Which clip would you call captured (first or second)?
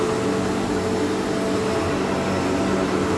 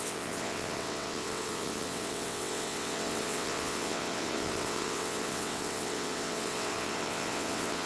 first